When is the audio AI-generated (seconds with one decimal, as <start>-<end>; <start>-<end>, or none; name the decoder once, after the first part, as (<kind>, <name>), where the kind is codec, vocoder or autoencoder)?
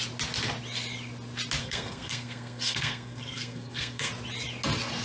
1.6-4.1 (codec, SNAC)